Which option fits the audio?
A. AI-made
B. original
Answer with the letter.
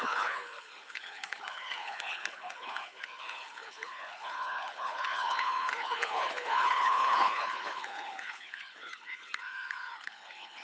A